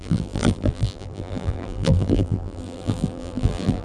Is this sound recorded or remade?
remade